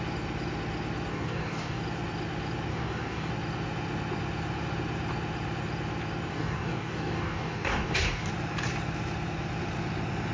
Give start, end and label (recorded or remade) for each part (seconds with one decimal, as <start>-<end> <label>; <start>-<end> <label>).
0.0-1.1 recorded; 1.1-1.8 remade; 1.8-2.7 recorded; 2.7-3.3 remade; 3.3-6.3 recorded; 6.3-8.3 remade; 8.3-10.3 recorded